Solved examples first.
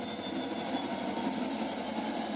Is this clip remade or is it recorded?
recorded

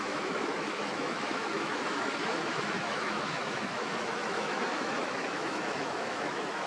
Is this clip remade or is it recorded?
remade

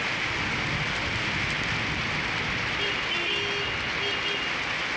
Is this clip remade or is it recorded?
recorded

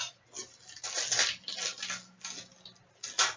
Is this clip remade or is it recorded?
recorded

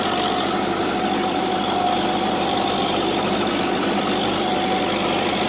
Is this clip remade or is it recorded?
recorded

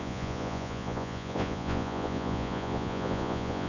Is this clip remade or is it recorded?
remade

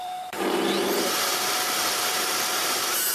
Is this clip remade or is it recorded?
remade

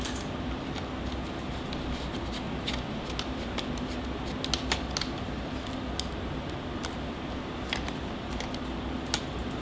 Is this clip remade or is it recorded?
recorded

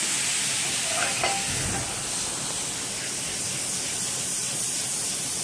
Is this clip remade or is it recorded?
recorded